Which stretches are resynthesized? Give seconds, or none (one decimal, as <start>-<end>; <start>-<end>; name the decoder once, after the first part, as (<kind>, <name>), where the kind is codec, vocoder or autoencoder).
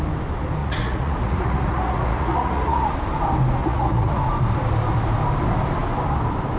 0.6-2.9 (vocoder, Vocos); 3.6-4.2